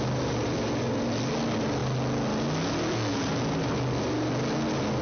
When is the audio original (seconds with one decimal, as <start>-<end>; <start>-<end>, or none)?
0.0-5.0